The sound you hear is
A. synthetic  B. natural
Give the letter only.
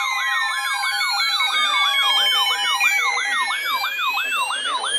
B